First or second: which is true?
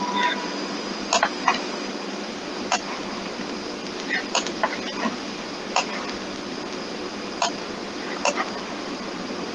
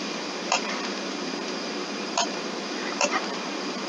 first